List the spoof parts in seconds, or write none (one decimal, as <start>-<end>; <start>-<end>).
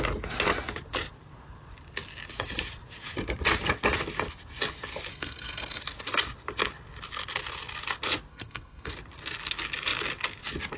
5.1-5.8; 8.3-8.9